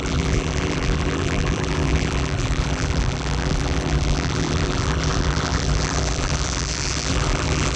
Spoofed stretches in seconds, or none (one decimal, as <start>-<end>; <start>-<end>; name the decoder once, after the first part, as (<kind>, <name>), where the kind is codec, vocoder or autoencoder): 0.0-7.8 (vocoder, BigVGAN v2)